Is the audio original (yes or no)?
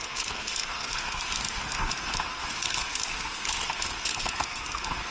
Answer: no